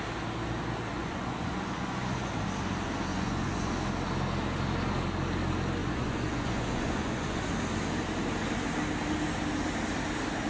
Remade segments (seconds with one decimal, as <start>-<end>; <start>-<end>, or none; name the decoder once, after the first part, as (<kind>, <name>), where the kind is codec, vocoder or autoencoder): 0.9-2.3 (vocoder, Vocos); 3.1-3.7; 5.8-7.5